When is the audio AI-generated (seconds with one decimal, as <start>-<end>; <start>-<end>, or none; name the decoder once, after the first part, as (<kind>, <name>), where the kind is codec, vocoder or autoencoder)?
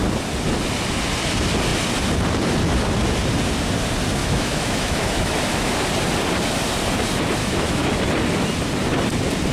4.2-5.7 (autoencoder, DAC-VAE); 7.4-7.9